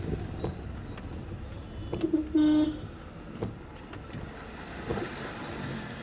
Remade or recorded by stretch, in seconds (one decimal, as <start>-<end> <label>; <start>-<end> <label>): 0.0-6.0 recorded